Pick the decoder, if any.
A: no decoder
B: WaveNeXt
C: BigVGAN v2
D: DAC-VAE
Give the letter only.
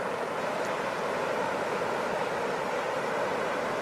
A